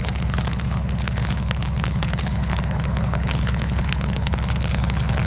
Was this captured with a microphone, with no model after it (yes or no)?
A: no